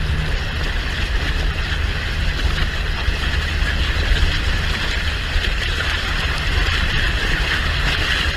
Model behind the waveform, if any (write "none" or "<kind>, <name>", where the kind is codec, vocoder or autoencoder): none